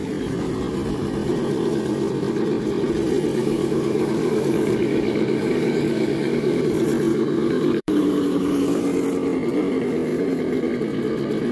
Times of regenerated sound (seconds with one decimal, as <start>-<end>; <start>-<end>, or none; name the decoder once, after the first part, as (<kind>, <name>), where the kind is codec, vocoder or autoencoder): 3.4-6.6 (codec, DAC); 7.1-8.8